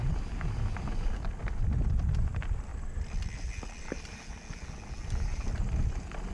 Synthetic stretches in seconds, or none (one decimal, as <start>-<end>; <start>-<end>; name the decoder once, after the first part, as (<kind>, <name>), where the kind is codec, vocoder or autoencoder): 0.0-1.4 (vocoder, BigVGAN v2); 2.7-4.4